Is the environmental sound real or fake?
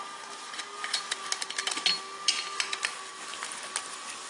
real